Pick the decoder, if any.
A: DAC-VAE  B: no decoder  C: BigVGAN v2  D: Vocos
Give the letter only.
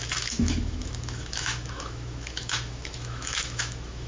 A